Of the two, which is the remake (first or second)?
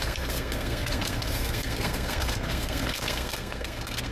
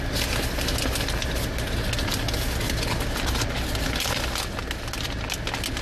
first